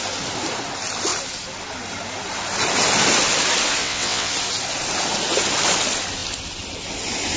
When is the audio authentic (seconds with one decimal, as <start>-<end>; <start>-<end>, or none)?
0.0-3.8; 4.3-7.4